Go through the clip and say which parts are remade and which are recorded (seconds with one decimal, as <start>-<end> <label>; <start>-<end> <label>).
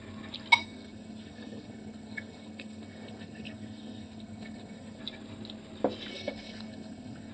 0.0-0.6 recorded; 0.6-5.0 remade; 5.0-6.1 recorded; 6.1-7.3 remade